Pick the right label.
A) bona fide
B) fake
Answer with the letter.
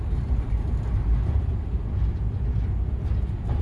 A